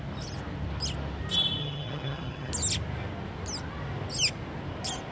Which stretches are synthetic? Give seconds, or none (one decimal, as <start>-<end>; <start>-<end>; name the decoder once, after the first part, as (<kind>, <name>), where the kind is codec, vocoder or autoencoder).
1.6-2.5 (vocoder, HiFi-GAN)

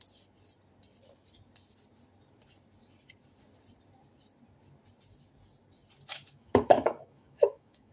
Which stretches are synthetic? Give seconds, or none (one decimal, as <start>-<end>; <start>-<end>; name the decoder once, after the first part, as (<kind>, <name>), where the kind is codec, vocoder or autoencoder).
6.1-7.9 (autoencoder, DAC-VAE)

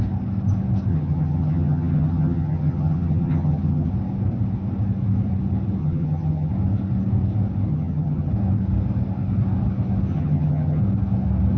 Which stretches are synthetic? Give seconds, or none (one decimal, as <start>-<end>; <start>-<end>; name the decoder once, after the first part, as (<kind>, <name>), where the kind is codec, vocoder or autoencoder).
0.9-3.9 (vocoder, HiFi-GAN); 5.8-6.5; 7.7-8.3; 10.1-10.8

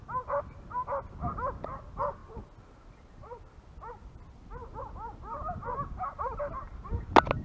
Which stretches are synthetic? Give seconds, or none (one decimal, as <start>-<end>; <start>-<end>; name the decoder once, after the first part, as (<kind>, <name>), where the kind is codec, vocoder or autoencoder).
none

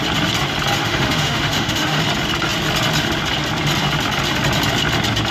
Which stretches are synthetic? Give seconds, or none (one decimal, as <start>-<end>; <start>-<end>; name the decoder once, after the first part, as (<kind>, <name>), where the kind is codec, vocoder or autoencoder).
0.8-2.0 (autoencoder, DAC-VAE)

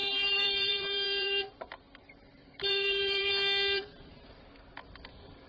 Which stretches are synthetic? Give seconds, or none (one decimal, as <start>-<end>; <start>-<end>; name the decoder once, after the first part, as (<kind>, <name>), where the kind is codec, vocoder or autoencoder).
0.0-3.3 (vocoder, BigVGAN v2)